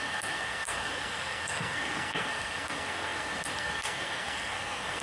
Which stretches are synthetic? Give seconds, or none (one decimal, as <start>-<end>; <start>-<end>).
0.0-5.0